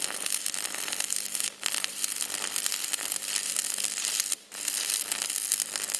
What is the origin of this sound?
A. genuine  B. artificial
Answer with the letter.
A